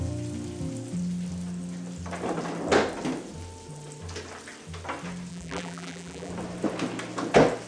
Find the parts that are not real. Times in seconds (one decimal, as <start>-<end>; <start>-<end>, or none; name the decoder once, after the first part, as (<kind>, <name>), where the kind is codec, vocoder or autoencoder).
5.3-6.3 (vocoder, BigVGAN v2)